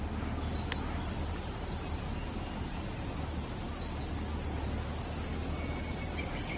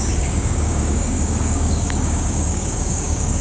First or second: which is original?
first